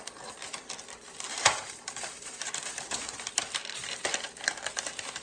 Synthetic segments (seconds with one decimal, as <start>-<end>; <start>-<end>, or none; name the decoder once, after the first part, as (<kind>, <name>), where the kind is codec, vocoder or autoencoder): 1.3-3.3 (vocoder, BigVGAN v2)